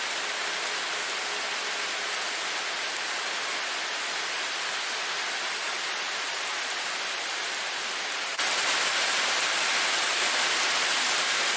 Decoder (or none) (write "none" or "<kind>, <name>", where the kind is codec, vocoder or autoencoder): none